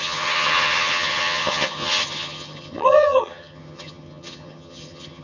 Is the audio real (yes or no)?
no